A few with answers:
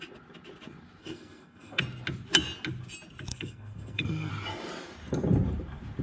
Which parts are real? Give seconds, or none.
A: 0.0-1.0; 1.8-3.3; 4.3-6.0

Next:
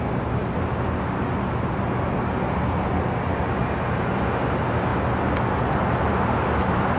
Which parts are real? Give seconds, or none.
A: 0.0-7.0

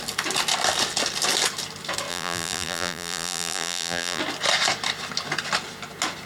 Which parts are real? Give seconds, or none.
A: 0.0-2.1; 4.2-6.3